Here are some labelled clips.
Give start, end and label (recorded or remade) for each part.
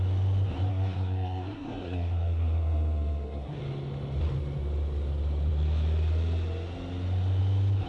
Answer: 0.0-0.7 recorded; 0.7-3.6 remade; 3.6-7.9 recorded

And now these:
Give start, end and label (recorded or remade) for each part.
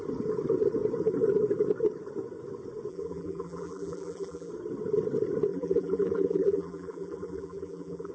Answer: 0.0-2.9 recorded; 2.9-4.5 remade; 4.5-5.5 recorded; 5.5-8.1 remade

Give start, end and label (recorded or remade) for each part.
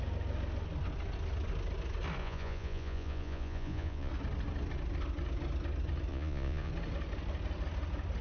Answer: 0.0-2.2 recorded; 2.2-4.1 remade; 4.1-6.1 recorded; 6.1-6.7 remade; 6.7-8.2 recorded